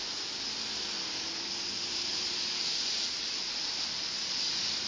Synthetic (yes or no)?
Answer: no